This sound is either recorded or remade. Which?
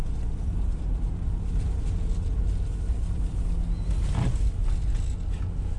recorded